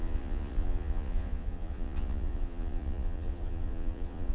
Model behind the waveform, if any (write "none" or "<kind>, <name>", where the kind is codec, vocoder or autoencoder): vocoder, Vocos